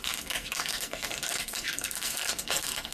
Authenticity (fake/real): fake